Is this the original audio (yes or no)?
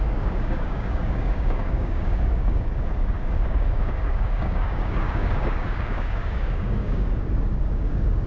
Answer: no